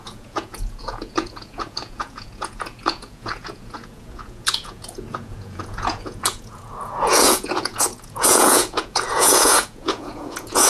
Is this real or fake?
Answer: fake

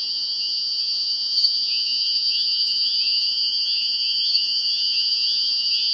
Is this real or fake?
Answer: fake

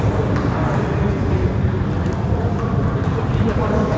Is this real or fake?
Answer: real